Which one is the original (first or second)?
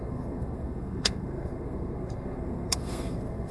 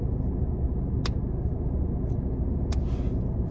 second